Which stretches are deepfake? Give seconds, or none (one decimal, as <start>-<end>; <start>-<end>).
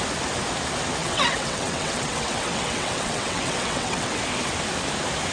1.0-4.2